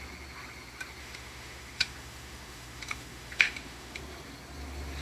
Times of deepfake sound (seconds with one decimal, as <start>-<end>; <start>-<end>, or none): 1.0-4.0